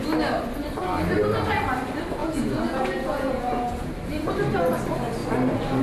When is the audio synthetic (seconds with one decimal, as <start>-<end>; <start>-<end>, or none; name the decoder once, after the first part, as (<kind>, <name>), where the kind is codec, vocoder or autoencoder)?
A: 2.2-3.9 (vocoder, Vocos)